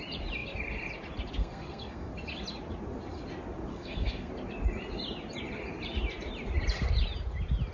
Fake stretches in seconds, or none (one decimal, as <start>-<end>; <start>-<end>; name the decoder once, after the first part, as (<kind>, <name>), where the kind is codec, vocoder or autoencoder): 1.4-2.1 (codec, SNAC); 3.7-4.3